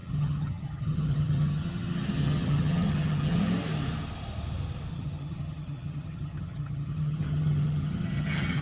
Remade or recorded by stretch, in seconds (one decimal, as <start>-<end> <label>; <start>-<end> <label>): 0.0-3.4 remade; 3.4-4.9 recorded; 4.9-8.6 remade

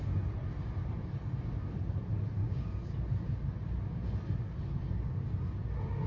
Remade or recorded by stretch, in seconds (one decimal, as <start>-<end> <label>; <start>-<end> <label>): 0.0-2.4 recorded; 2.4-2.9 remade; 2.9-6.1 recorded

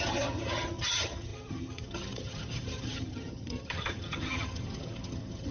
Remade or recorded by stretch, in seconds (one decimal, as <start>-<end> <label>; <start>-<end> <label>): 0.0-5.5 remade